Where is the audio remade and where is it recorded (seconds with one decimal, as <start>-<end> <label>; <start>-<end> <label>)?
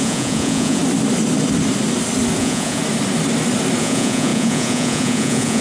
0.0-0.8 remade; 0.8-2.4 recorded; 2.4-2.8 remade; 2.8-3.8 recorded; 3.8-5.6 remade